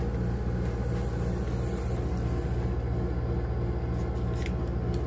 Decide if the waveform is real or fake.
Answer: real